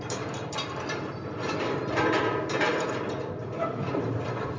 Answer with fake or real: fake